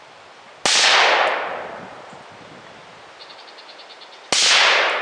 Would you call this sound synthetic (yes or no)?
no